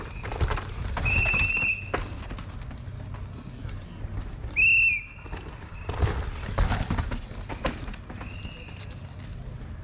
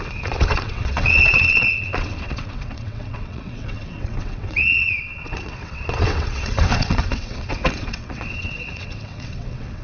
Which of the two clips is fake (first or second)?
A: second